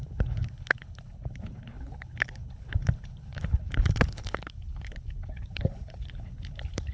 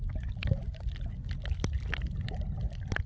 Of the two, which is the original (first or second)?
second